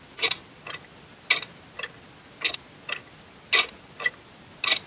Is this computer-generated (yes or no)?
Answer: no